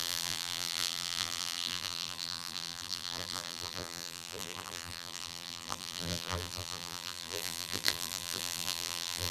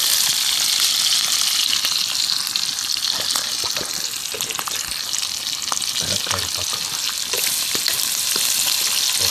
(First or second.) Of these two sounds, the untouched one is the second